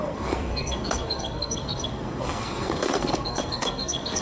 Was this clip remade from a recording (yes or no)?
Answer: yes